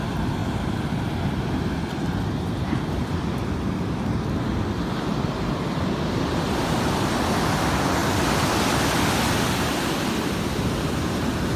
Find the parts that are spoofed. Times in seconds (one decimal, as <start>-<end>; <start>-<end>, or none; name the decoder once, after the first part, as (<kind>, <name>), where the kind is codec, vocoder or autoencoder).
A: none